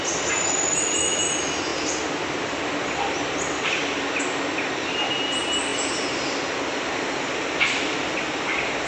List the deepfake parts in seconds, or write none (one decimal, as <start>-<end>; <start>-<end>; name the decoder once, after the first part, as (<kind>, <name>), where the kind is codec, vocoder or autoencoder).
none